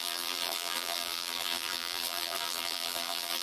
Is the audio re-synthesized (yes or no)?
yes